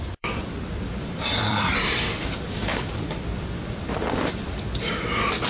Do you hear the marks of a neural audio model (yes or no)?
yes